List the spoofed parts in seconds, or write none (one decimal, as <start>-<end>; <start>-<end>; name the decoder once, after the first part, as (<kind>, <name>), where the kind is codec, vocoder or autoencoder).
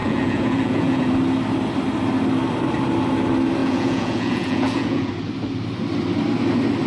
0.0-1.1 (vocoder, Vocos); 3.6-5.1